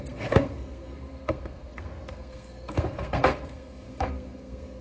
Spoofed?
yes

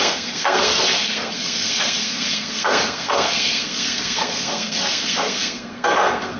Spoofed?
yes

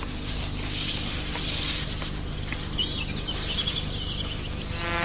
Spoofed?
no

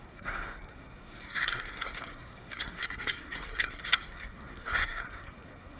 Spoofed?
yes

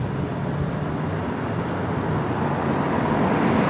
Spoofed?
no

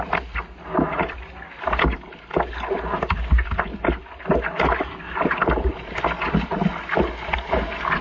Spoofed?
no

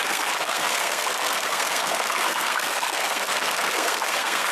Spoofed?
yes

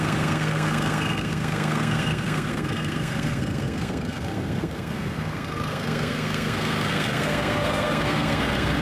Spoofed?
yes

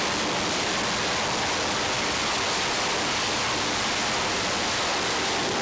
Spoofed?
no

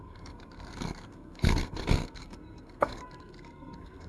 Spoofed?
yes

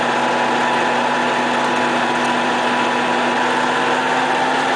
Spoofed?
no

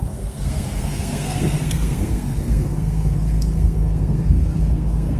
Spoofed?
yes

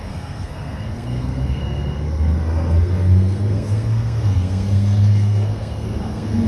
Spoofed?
yes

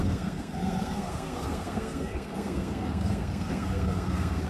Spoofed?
yes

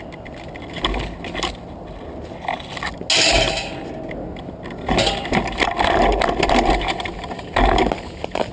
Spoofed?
no